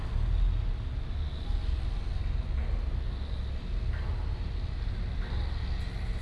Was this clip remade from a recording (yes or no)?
no